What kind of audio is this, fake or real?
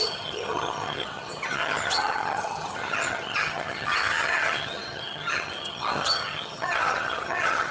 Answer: fake